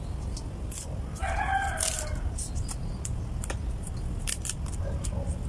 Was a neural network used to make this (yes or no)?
no